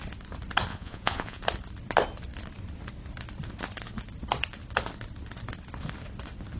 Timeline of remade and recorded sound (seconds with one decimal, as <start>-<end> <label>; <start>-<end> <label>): 0.0-0.7 recorded; 0.7-1.4 remade; 1.4-6.6 recorded